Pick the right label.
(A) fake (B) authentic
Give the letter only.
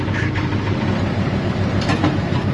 A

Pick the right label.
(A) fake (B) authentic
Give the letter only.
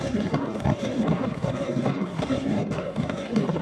A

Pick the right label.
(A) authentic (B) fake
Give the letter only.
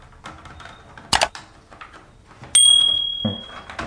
A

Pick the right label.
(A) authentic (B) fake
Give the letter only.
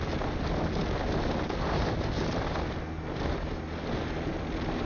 A